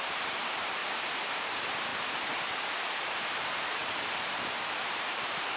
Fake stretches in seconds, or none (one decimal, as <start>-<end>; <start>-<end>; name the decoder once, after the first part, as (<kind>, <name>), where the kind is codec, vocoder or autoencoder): 0.0-0.8 (vocoder, BigVGAN v2); 1.3-1.9; 2.8-5.6